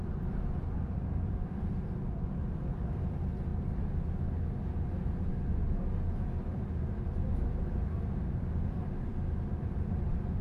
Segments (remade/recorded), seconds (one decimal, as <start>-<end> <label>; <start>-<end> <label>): 0.0-3.5 remade; 3.5-6.8 recorded; 6.8-10.4 remade